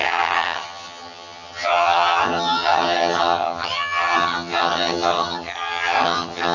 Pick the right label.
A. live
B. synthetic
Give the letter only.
B